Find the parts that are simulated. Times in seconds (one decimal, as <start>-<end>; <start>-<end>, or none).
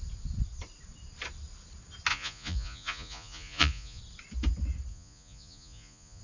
2.1-4.0; 4.9-6.2